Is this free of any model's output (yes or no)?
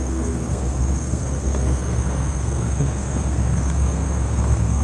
no